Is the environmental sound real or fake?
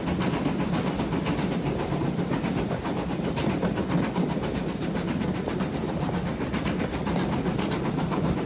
real